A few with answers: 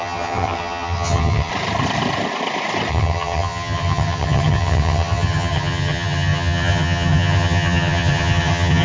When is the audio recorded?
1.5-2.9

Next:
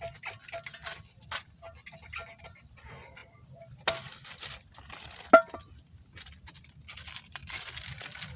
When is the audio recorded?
0.0-8.4

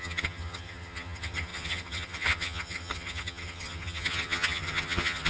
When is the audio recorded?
none

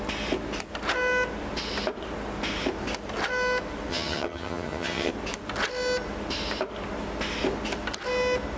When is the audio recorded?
0.0-3.9; 5.1-8.6

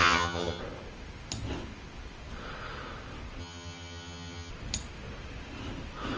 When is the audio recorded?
0.6-3.4; 4.5-6.2